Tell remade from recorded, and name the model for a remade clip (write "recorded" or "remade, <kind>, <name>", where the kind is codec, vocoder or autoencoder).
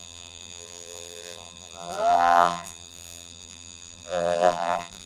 remade, vocoder, BigVGAN v2